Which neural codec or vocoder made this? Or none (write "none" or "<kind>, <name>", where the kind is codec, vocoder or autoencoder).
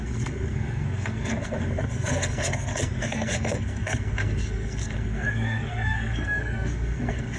codec, SNAC